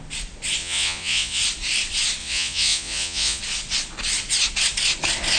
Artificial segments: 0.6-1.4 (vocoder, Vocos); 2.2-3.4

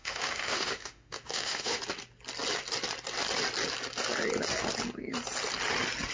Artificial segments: 0.0-1.8 (autoencoder, DAC-VAE)

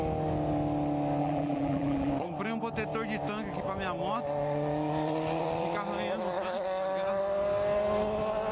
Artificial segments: 1.2-2.1 (vocoder, BigVGAN v2)

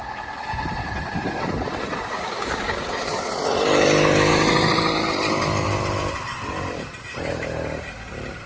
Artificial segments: 2.1-3.0 (codec, DAC)

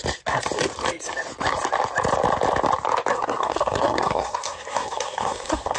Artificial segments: 3.1-5.8 (codec, SNAC)

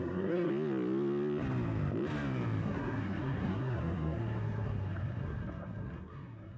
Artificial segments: 0.0-0.5 (codec, SNAC); 2.6-6.6